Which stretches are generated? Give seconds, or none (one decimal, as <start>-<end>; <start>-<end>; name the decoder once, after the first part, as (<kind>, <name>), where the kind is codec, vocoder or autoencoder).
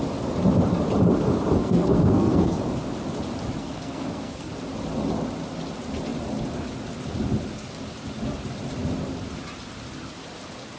1.6-2.6 (codec, SNAC); 3.6-4.5